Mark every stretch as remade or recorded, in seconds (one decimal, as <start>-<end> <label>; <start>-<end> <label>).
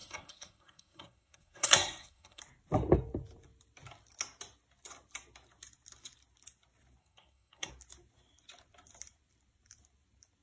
0.0-2.4 remade; 2.4-7.0 recorded; 7.0-7.7 remade; 7.7-10.4 recorded